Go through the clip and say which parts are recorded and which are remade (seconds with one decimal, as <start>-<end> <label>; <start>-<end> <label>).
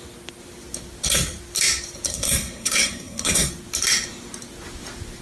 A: 0.0-2.1 recorded; 2.1-3.5 remade; 3.5-5.2 recorded